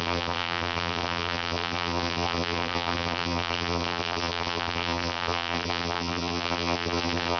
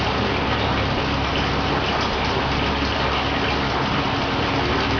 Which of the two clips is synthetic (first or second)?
first